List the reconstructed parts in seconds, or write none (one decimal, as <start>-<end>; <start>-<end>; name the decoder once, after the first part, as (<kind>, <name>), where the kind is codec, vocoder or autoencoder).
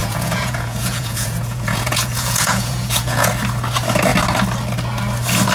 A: 0.0-3.3 (vocoder, Vocos)